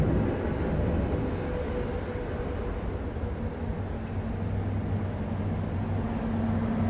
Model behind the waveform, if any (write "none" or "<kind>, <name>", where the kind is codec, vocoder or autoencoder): none